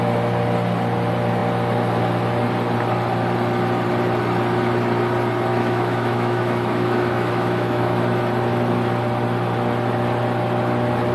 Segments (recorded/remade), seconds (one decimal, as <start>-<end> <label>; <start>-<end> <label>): 0.0-5.5 recorded; 5.5-8.0 remade; 8.0-11.1 recorded